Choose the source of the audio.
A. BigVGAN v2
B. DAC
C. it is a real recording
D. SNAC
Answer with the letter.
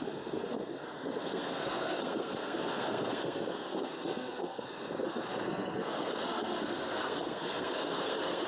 D